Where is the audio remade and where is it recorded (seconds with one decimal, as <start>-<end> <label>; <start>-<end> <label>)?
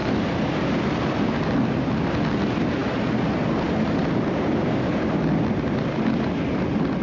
0.0-7.0 recorded